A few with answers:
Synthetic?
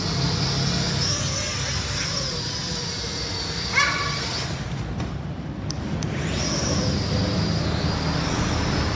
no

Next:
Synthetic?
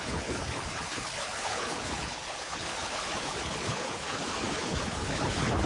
yes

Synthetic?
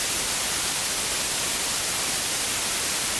no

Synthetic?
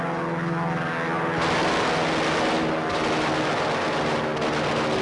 no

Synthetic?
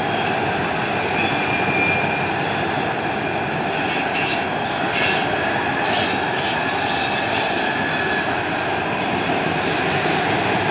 no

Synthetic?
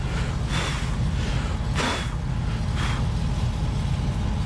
no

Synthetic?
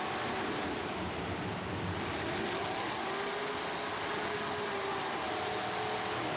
no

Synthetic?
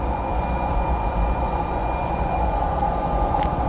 yes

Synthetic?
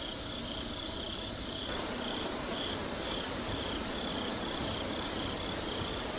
yes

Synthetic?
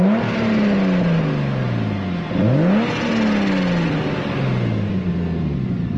no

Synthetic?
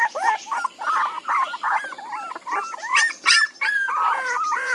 yes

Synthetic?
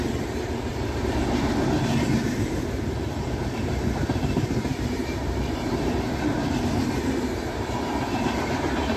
yes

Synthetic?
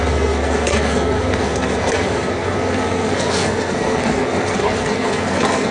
yes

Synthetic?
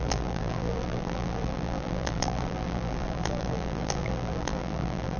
yes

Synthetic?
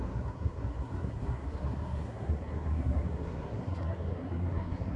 yes